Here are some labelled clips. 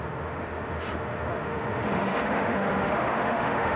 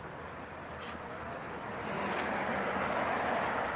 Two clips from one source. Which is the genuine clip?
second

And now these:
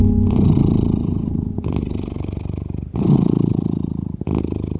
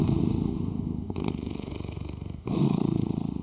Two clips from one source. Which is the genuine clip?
first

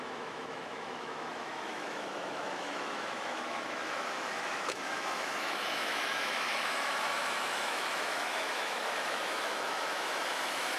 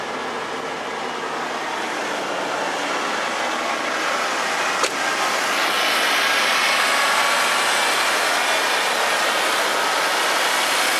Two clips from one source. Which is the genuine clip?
second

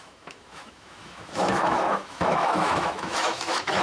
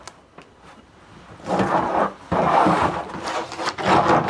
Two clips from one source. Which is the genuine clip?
second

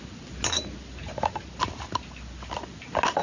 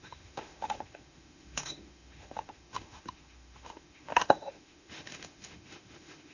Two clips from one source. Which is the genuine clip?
first